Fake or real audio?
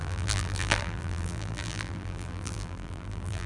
fake